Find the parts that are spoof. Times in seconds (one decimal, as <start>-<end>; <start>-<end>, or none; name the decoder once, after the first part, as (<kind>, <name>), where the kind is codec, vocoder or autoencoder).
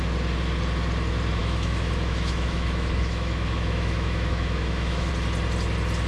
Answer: 1.4-5.1 (autoencoder, DAC-VAE)